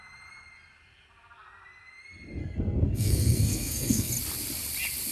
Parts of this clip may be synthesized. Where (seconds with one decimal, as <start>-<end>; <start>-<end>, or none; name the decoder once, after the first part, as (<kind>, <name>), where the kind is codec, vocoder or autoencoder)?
2.4-4.1 (codec, SNAC)